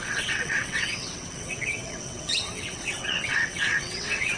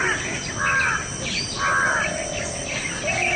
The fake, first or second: first